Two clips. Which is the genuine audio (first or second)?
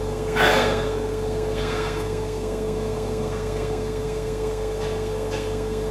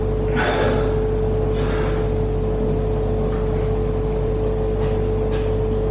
second